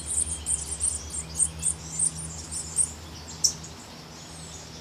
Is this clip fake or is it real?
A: real